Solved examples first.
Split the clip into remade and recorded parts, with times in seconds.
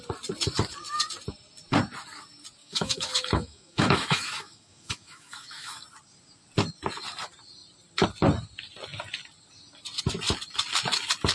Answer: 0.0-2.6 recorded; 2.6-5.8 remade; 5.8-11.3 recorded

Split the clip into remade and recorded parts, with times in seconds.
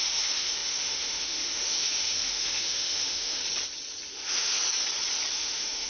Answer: 0.0-3.4 remade; 3.4-4.1 recorded; 4.1-4.5 remade; 4.5-5.3 recorded; 5.3-5.9 remade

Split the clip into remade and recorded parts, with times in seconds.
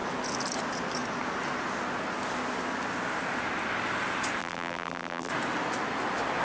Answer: 0.0-4.4 recorded; 4.4-5.3 remade; 5.3-6.4 recorded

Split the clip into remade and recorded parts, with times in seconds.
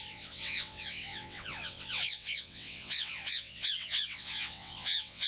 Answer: 0.0-5.3 remade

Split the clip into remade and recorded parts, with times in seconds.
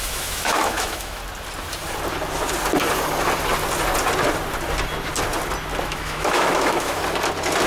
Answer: 0.0-1.2 remade; 1.2-5.8 recorded; 5.8-7.0 remade; 7.0-7.7 recorded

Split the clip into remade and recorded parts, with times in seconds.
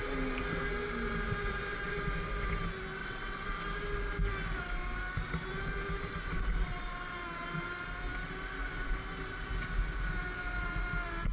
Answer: 0.0-3.0 recorded; 3.0-3.5 remade; 3.5-11.3 recorded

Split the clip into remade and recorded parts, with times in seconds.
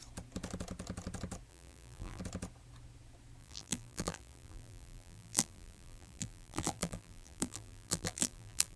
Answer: 0.0-1.5 recorded; 1.5-2.2 remade; 2.2-3.4 recorded; 3.4-8.8 remade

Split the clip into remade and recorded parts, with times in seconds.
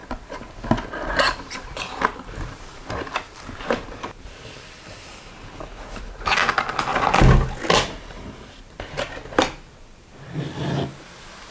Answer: 0.0-11.5 recorded